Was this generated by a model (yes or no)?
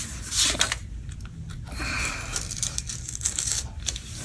yes